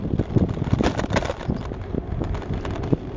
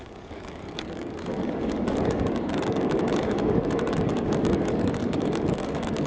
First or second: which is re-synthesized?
second